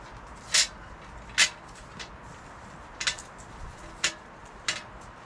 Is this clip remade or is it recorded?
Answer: recorded